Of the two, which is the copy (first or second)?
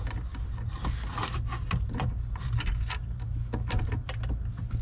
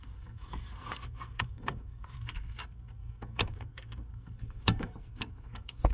second